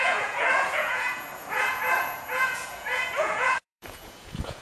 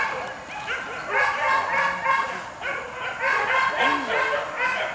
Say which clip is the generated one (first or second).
first